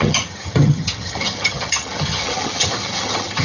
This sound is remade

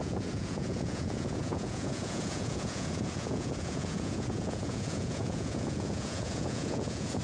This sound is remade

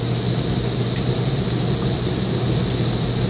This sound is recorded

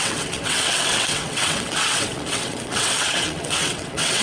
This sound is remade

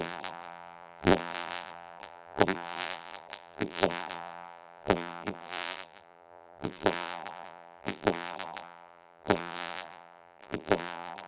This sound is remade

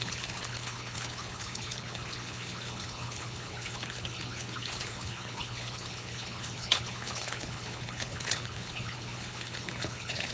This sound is remade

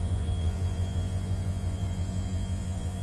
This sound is remade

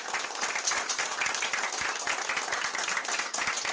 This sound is recorded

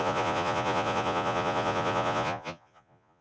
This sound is remade